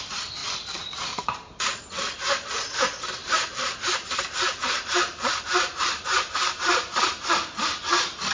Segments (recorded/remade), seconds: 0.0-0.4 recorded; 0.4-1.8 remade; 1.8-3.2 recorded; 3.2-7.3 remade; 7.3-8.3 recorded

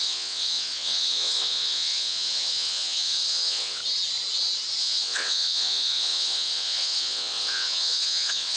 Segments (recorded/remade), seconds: 0.0-3.8 remade; 3.8-4.8 recorded; 4.8-8.6 remade

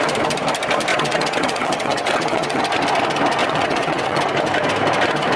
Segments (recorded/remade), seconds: 0.0-0.9 recorded; 0.9-2.6 remade; 2.6-3.4 recorded; 3.4-4.2 remade; 4.2-5.4 recorded

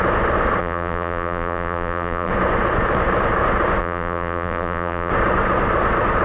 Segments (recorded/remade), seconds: 0.0-0.6 recorded; 0.6-2.3 remade; 2.3-3.8 recorded; 3.8-5.1 remade; 5.1-6.2 recorded

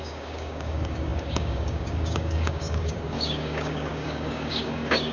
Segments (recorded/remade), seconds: 0.0-5.1 remade

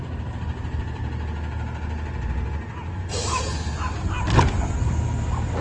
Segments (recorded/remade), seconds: 0.0-1.0 remade; 1.0-4.4 recorded; 4.4-5.6 remade